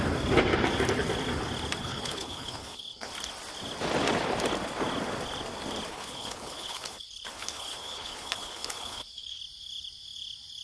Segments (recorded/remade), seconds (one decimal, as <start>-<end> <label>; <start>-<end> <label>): 0.0-1.8 recorded; 1.8-3.1 remade; 3.1-5.9 recorded; 5.9-9.4 remade; 9.4-10.6 recorded